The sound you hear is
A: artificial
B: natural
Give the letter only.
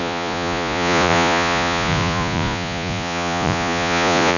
A